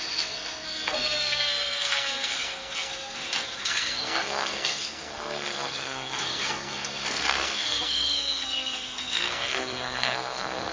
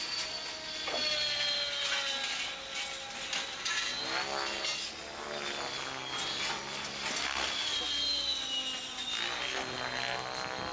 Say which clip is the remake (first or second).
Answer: first